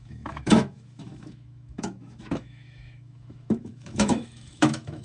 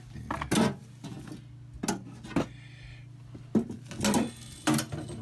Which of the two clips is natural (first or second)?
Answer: second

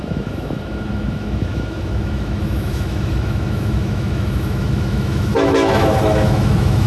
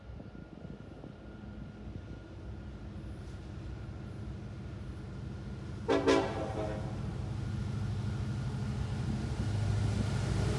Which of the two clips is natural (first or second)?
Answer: second